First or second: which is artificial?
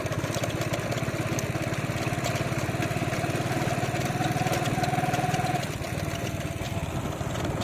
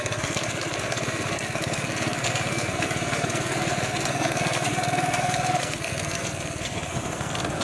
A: second